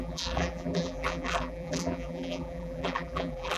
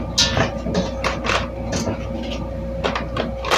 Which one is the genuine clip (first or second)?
second